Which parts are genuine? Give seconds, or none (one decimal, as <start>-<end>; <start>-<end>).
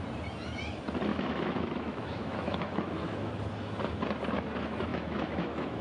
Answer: 0.0-1.1; 3.3-4.9